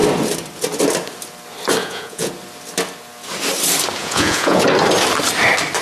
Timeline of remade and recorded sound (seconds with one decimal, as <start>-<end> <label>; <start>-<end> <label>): 0.0-1.8 recorded; 1.8-2.3 remade; 2.3-4.0 recorded; 4.0-4.6 remade; 4.6-5.8 recorded